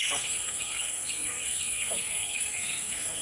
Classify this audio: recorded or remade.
remade